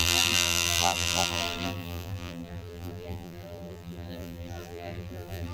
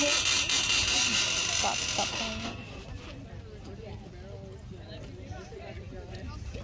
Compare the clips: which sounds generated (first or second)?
first